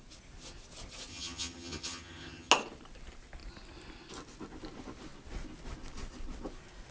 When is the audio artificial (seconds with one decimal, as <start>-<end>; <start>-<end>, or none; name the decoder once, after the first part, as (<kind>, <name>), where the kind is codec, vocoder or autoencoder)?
1.1-2.5 (vocoder, HiFi-GAN)